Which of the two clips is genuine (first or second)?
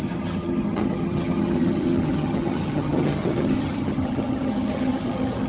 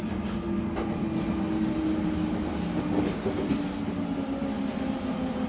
second